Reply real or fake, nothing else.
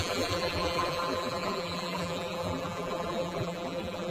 fake